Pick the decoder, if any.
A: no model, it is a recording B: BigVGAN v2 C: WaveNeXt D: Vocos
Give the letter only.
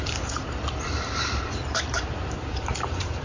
B